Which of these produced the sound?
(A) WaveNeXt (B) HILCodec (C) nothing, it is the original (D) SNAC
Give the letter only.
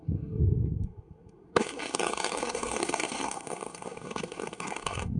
D